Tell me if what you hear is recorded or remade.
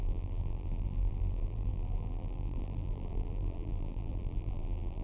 remade